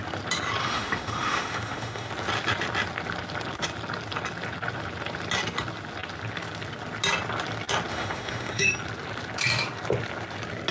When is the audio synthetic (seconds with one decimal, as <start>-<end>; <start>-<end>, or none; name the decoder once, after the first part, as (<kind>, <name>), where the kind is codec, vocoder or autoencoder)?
0.6-2.1 (autoencoder, DAC-VAE); 7.9-8.7